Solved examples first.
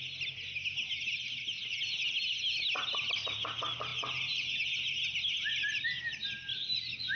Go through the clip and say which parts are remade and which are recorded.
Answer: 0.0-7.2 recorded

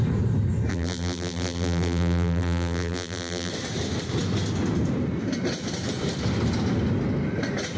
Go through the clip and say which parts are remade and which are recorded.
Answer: 0.0-0.7 recorded; 0.7-3.5 remade; 3.5-7.8 recorded

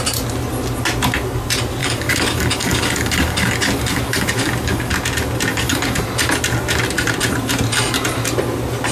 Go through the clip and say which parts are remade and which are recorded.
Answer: 0.0-1.8 recorded; 1.8-4.9 remade; 4.9-5.5 recorded; 5.5-6.0 remade; 6.0-8.9 recorded

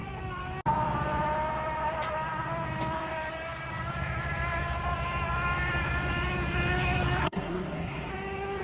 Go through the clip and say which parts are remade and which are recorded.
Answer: 0.0-7.2 recorded; 7.2-8.1 remade; 8.1-8.6 recorded

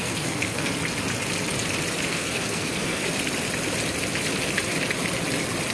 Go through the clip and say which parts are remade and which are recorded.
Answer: 0.0-0.7 remade; 0.7-2.1 recorded; 2.1-3.0 remade; 3.0-5.7 recorded

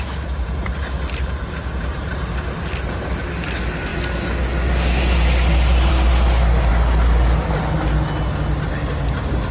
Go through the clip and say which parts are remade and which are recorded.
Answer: 0.0-9.5 recorded

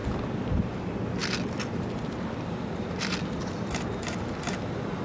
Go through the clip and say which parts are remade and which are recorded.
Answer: 0.0-0.6 remade; 0.6-1.2 recorded; 1.2-3.9 remade; 3.9-5.0 recorded

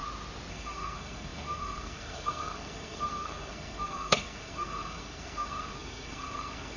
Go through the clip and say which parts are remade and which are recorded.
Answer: 0.0-0.5 recorded; 0.5-6.8 remade